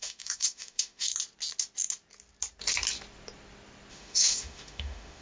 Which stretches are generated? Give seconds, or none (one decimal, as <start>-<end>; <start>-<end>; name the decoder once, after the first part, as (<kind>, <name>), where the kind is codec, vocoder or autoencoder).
0.0-1.1 (autoencoder, DAC-VAE); 3.9-5.2